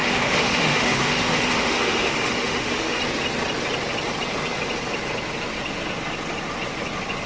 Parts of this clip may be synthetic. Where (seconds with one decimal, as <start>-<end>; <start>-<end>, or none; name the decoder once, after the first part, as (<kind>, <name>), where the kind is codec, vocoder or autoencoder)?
0.0-3.0 (autoencoder, DAC-VAE)